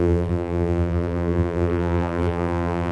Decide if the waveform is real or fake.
fake